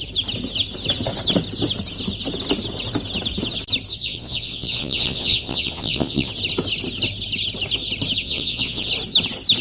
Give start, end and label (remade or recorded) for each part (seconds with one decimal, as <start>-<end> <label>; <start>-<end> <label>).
0.0-3.9 recorded; 3.9-6.3 remade; 6.3-8.2 recorded; 8.2-8.9 remade; 8.9-9.6 recorded